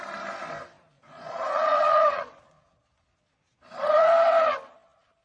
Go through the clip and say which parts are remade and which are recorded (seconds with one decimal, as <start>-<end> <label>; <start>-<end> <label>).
0.0-1.0 recorded; 1.0-4.1 remade; 4.1-5.2 recorded